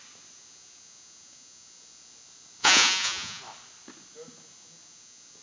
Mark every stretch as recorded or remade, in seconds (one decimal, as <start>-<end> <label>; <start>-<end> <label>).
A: 0.0-2.6 recorded; 2.6-3.4 remade; 3.4-5.4 recorded